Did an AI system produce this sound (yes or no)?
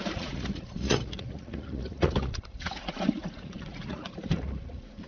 yes